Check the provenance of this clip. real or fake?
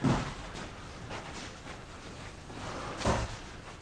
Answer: real